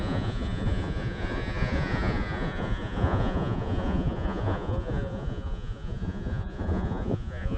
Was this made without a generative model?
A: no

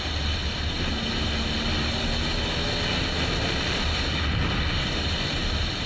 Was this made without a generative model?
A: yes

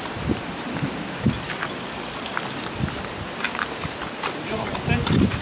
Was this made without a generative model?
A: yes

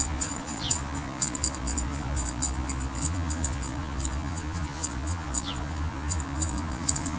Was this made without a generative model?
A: no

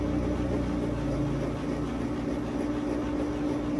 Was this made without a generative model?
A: yes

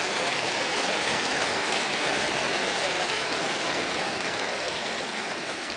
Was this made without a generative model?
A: no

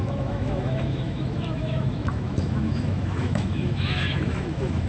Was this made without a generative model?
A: no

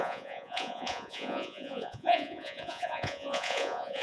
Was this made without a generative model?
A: no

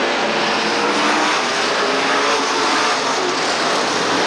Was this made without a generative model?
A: yes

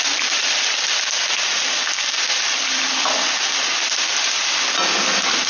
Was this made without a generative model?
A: yes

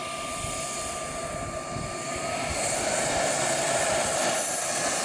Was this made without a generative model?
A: yes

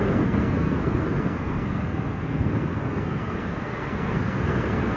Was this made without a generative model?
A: no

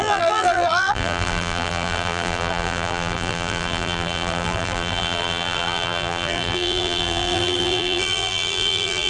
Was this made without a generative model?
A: no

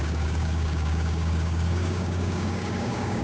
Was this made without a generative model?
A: no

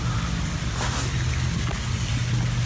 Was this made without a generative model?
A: yes